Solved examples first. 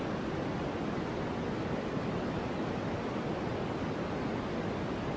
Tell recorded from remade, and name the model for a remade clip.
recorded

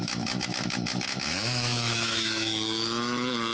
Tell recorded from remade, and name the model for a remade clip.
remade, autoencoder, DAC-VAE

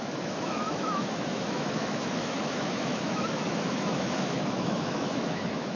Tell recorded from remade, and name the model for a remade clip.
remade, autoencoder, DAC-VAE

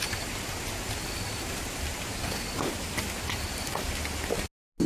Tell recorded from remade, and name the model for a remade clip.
recorded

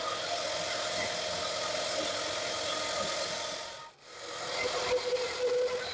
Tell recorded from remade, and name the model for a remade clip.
recorded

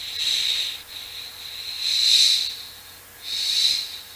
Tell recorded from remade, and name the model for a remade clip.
recorded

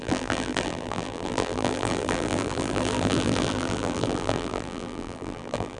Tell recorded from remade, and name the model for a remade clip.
remade, vocoder, BigVGAN v2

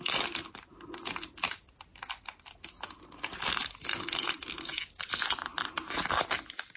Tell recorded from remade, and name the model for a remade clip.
recorded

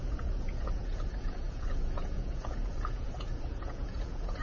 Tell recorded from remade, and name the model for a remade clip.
remade, vocoder, Vocos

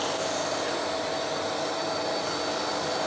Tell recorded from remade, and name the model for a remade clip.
recorded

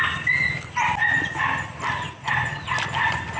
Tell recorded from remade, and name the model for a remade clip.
recorded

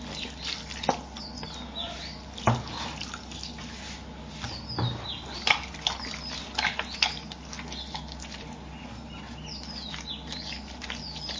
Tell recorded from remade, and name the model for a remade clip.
recorded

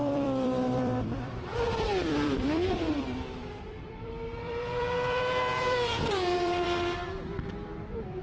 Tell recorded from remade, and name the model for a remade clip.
remade, vocoder, BigVGAN v2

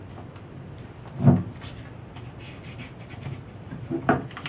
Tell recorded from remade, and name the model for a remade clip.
recorded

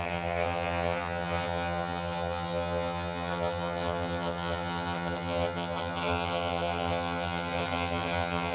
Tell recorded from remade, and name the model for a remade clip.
remade, vocoder, HiFi-GAN